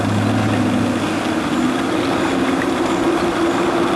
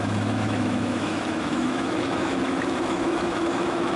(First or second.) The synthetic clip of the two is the second